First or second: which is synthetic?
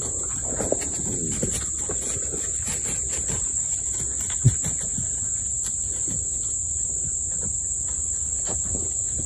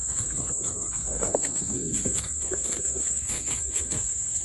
second